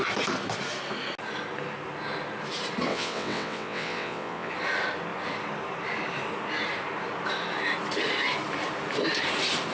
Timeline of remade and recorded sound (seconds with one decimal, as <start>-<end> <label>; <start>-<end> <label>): 0.0-2.9 recorded; 2.9-4.5 remade; 4.5-9.7 recorded